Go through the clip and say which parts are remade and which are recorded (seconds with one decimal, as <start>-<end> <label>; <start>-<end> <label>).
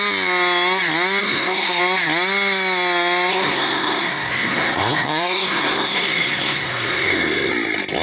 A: 0.0-1.2 recorded; 1.2-1.8 remade; 1.8-3.3 recorded; 3.3-7.5 remade; 7.5-8.0 recorded